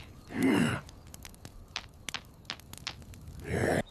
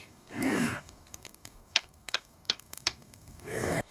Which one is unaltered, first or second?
first